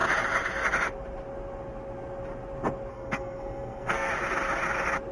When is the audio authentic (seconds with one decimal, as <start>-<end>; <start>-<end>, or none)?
0.0-2.9; 4.1-5.1